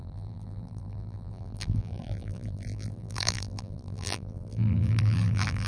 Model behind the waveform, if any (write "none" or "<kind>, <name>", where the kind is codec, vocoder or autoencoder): vocoder, BigVGAN v2